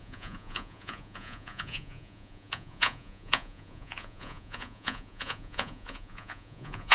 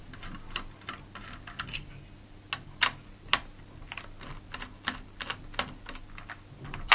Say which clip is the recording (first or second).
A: second